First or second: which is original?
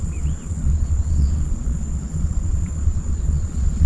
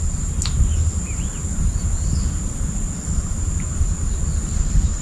second